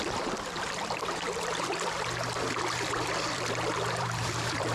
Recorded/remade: remade